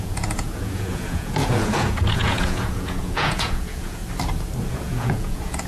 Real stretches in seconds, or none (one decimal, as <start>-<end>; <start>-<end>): 4.0-4.7